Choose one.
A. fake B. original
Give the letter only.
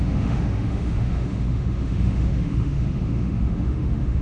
A